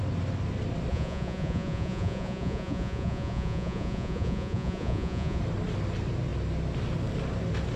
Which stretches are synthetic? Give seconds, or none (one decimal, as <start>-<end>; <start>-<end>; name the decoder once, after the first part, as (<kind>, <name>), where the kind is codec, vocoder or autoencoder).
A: 0.9-5.4 (vocoder, Vocos)